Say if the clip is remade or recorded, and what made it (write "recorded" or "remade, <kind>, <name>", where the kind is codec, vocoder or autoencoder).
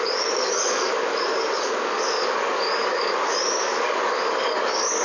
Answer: remade, codec, DAC